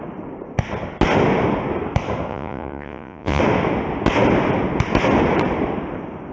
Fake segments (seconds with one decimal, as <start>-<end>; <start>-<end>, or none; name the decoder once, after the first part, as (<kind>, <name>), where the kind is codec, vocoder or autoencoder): 2.3-3.4 (vocoder, Vocos)